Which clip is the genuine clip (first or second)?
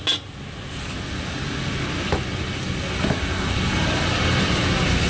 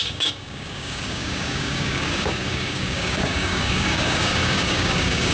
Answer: first